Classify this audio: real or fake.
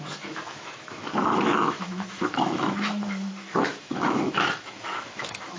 fake